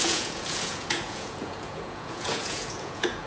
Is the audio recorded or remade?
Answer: remade